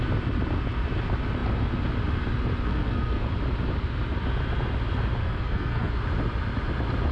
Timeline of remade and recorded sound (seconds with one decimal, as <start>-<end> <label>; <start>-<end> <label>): 0.0-2.7 recorded; 2.7-3.3 remade; 3.3-5.2 recorded; 5.2-5.9 remade; 5.9-7.1 recorded

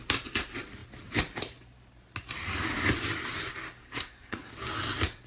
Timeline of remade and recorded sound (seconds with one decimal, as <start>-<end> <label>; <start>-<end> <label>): 0.0-3.8 recorded; 3.8-4.5 remade; 4.5-5.3 recorded